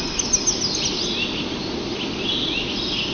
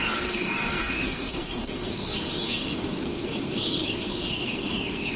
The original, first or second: first